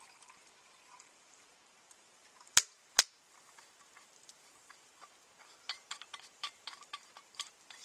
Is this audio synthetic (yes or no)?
yes